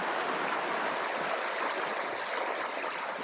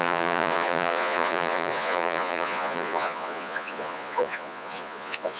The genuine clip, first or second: first